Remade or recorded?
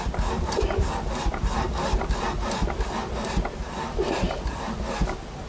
recorded